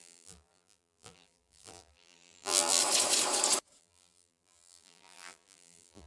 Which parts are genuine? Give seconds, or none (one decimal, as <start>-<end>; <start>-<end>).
2.8-3.8